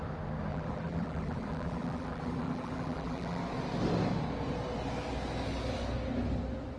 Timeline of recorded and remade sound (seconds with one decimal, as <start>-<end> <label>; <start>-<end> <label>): 0.0-0.5 recorded; 0.5-3.4 remade; 3.4-6.8 recorded